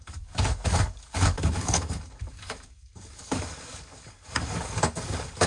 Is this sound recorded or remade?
remade